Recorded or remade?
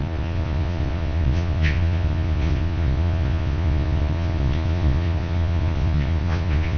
remade